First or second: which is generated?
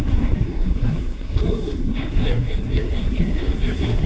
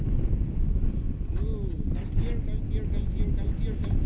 first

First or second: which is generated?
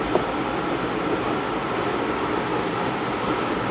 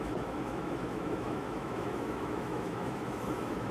second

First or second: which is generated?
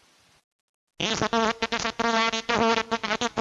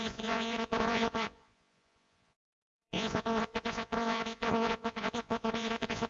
second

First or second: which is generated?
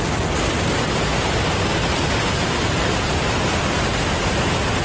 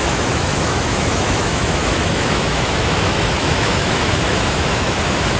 second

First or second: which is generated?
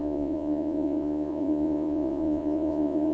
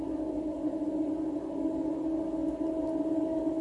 first